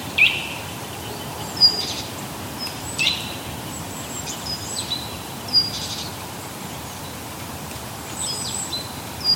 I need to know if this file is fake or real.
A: fake